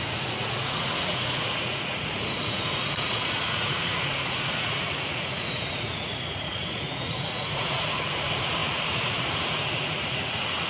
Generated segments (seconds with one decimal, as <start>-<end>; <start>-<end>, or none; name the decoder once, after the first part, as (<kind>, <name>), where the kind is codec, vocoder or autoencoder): 0.0-10.7 (vocoder, Vocos)